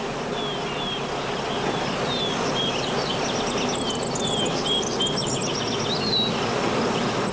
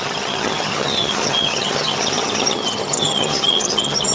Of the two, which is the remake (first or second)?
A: second